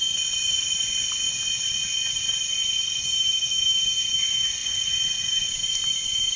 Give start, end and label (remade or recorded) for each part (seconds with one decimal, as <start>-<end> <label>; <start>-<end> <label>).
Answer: 0.0-6.4 recorded